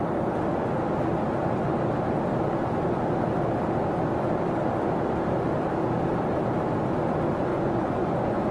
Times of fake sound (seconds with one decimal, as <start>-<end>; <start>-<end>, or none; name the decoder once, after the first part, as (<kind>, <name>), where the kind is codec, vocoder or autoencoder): 7.5-8.5 (vocoder, Vocos)